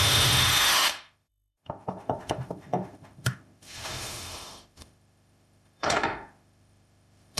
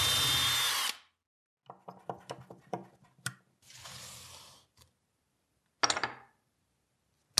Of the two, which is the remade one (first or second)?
first